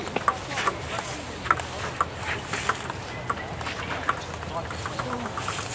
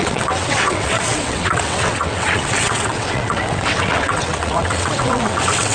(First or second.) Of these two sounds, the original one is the first